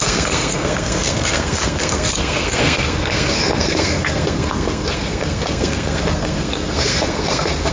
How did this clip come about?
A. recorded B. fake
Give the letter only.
B